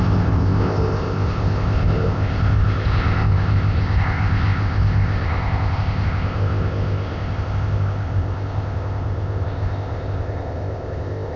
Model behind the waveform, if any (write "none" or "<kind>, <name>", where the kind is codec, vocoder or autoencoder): codec, ZipCodec